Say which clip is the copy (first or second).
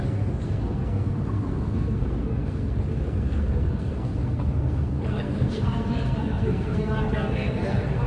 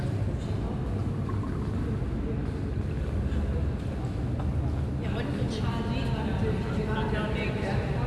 first